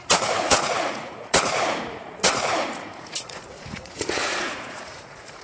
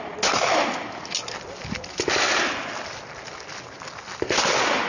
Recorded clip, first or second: second